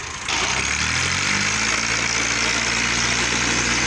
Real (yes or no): yes